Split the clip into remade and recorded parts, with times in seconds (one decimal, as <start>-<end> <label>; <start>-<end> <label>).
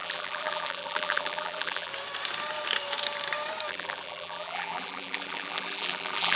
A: 0.0-1.9 remade; 1.9-3.7 recorded; 3.7-6.4 remade